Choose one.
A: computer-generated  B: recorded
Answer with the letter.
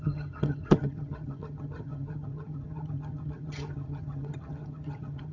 A